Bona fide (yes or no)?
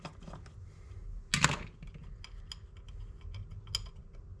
yes